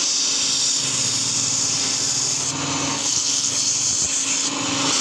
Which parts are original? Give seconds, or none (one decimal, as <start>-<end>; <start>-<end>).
0.0-2.9; 3.5-5.0